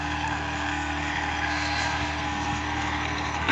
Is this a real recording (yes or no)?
no